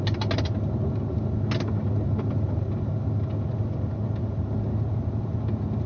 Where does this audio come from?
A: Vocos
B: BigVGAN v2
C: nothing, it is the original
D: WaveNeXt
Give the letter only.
C